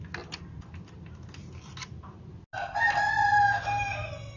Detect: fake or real real